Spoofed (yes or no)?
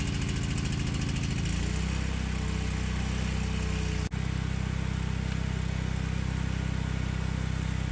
no